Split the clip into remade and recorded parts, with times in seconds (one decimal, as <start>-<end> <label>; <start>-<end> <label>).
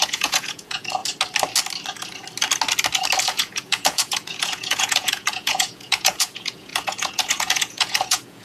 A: 0.0-1.0 remade; 1.0-3.2 recorded; 3.2-8.4 remade